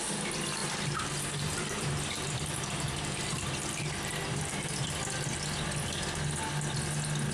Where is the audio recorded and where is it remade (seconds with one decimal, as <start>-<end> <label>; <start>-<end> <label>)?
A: 0.0-0.6 recorded; 0.6-5.0 remade; 5.0-7.3 recorded